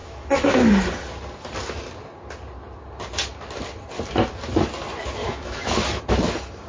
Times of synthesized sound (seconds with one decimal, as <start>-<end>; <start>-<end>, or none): 0.0-0.7; 5.2-6.0